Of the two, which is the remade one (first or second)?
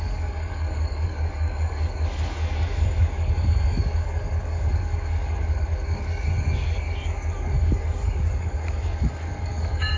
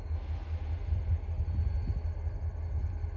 first